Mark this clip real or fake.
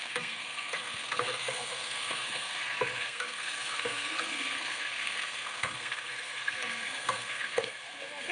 fake